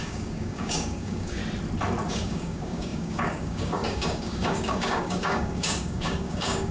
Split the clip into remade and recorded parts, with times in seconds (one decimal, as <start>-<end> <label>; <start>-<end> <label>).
0.0-1.4 remade; 1.4-2.1 recorded; 2.1-6.7 remade

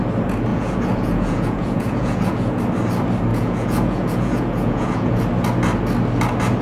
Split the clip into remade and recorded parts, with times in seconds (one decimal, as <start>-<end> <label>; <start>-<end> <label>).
0.0-0.5 recorded; 0.5-2.6 remade; 2.6-3.3 recorded; 3.3-5.2 remade; 5.2-6.6 recorded

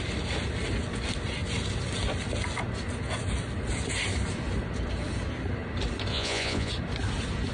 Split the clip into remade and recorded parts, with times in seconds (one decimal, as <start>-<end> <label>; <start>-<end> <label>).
0.0-6.1 recorded; 6.1-6.7 remade; 6.7-7.5 recorded

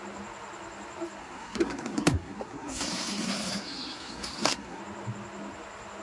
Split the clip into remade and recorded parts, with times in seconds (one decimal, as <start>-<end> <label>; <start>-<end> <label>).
0.0-1.2 recorded; 1.2-4.8 remade; 4.8-6.0 recorded

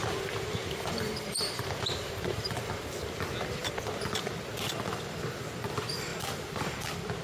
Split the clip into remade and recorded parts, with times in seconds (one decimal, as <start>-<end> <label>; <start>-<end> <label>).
0.0-0.6 recorded; 0.6-2.6 remade; 2.6-7.2 recorded

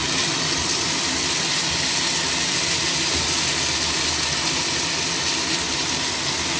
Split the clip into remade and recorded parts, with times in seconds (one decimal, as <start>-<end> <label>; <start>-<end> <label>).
0.0-6.6 recorded

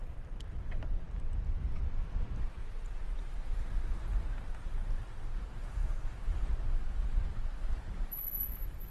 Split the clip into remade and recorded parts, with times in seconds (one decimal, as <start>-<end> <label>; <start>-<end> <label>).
0.0-2.6 remade; 2.6-5.5 recorded; 5.5-8.9 remade